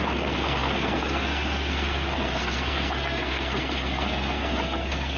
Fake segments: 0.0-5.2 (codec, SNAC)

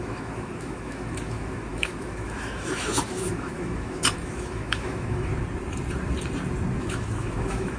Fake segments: 0.0-5.3 (autoencoder, DAC-VAE); 6.8-7.8

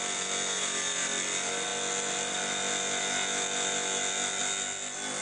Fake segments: none

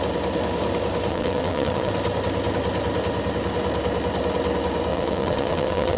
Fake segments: 1.1-1.9 (vocoder, WaveNeXt); 4.9-6.0

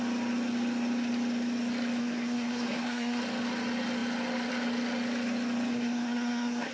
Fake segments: 2.0-3.2 (codec, SNAC); 5.7-6.7